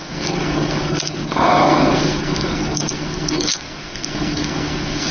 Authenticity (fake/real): fake